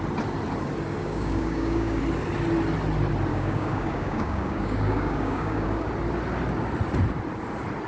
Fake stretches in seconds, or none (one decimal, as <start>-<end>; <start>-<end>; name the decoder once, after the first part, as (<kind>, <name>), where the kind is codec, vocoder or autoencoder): 1.0-2.0 (codec, DAC); 3.3-5.9